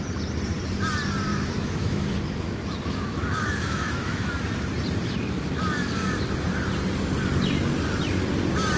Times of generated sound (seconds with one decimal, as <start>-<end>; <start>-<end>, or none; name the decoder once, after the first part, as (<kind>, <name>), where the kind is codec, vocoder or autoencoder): 1.3-4.3 (autoencoder, DAC-VAE)